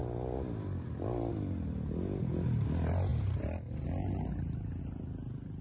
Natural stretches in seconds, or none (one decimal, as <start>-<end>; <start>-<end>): 0.0-5.6

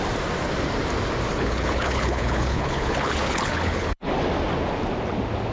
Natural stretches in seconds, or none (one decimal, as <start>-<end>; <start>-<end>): 0.0-1.3; 4.1-5.5

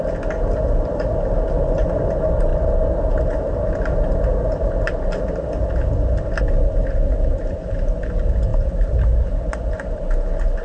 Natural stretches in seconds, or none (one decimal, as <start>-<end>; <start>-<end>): 0.0-10.6

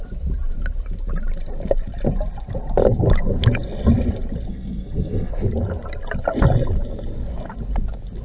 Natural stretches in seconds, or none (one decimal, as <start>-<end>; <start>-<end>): 0.0-4.5; 5.3-8.2

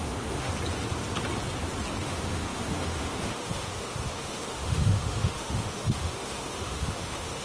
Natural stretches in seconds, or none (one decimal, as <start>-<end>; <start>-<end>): 0.5-2.0